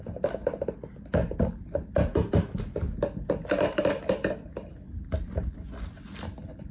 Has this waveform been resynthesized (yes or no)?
no